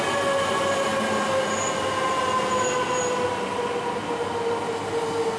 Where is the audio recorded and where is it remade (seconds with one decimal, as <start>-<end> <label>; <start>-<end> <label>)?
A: 0.0-5.4 recorded